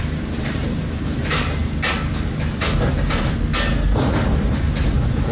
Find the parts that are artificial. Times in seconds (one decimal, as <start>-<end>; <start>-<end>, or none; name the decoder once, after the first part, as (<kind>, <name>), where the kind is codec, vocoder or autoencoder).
0.0-1.6 (vocoder, BigVGAN v2); 4.8-5.3